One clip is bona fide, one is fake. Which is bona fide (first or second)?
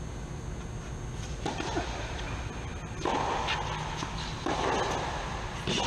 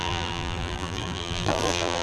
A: first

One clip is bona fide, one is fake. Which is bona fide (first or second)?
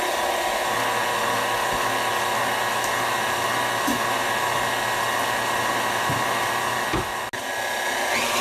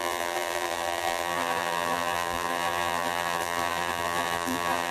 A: first